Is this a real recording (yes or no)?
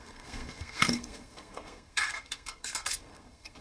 no